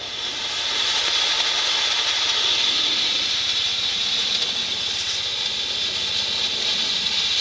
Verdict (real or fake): real